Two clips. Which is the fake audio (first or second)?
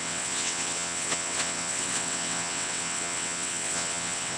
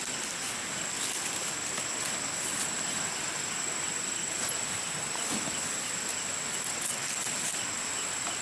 first